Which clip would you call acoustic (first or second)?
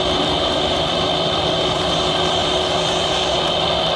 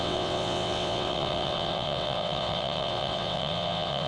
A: first